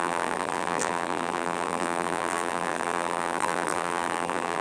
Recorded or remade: remade